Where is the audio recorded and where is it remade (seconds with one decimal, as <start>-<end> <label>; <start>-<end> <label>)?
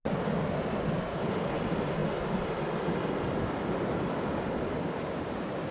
0.0-1.1 recorded; 1.1-1.6 remade; 1.6-5.7 recorded